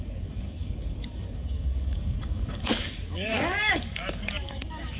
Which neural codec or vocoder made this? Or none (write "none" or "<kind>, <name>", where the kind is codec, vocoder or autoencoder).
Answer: codec, DAC